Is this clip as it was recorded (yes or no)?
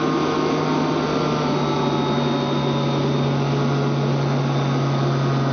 yes